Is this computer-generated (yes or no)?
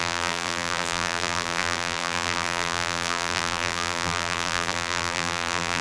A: yes